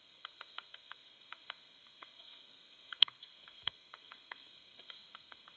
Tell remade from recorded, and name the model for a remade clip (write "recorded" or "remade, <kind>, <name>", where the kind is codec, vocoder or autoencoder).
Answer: remade, codec, SNAC